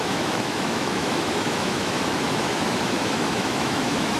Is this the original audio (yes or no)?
no